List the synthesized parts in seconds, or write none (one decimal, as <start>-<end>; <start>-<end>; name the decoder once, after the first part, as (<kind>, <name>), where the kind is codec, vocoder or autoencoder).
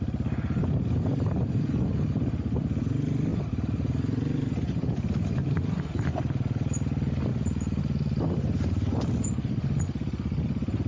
none